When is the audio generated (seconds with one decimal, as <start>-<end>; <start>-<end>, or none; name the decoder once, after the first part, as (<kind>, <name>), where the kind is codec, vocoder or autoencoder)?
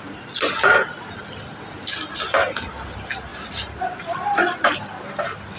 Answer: 3.3-5.0 (vocoder, BigVGAN v2)